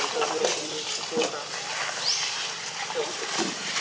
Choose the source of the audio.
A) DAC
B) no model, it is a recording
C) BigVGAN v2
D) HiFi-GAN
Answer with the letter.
B